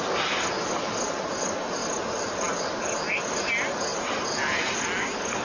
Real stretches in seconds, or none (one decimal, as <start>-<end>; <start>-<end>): 0.0-1.8; 2.5-3.9; 4.7-5.4